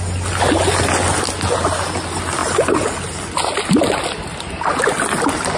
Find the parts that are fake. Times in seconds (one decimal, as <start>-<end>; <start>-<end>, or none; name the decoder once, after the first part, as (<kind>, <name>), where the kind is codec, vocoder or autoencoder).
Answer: none